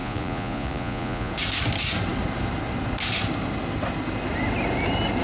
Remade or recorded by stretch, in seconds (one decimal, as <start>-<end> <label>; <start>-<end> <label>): 0.0-1.3 remade; 1.3-5.2 recorded